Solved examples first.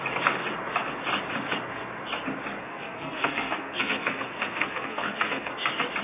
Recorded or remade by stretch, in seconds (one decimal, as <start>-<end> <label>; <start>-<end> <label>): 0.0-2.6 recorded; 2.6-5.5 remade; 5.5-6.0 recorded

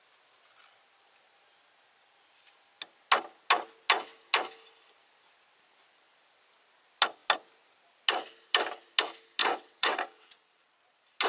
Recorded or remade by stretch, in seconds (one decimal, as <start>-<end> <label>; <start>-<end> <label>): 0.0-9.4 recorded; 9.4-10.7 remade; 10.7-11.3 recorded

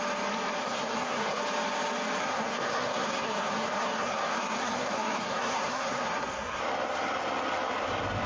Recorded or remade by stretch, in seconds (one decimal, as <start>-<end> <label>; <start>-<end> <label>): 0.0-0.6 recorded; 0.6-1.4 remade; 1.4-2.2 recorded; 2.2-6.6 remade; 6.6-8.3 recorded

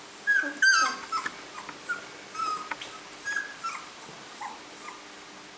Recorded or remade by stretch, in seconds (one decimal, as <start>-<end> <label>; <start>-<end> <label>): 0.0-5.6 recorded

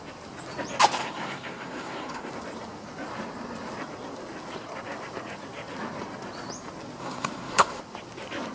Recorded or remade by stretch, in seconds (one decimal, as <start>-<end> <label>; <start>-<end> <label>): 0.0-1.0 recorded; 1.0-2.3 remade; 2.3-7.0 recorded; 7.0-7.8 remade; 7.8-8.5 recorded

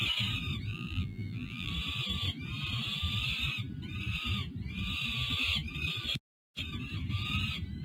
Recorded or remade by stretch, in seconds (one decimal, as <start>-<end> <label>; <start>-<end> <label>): 0.0-0.7 recorded; 0.7-1.7 remade; 1.7-7.8 recorded

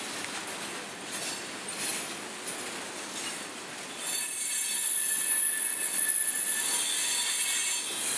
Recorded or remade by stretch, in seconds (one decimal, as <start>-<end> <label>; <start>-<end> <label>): 0.0-8.2 recorded

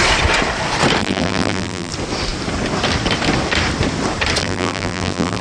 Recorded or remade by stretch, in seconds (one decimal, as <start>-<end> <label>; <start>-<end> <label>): 0.0-1.0 recorded; 1.0-1.9 remade; 1.9-4.4 recorded; 4.4-5.4 remade